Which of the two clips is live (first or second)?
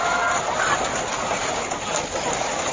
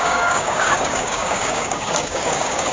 first